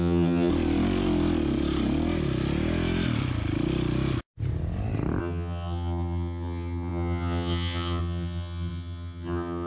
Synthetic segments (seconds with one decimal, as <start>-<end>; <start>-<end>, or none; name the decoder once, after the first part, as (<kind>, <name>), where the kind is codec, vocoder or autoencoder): 0.0-0.5 (vocoder, HiFi-GAN); 5.2-9.7